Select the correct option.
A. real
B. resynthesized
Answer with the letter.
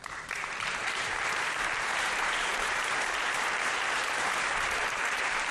B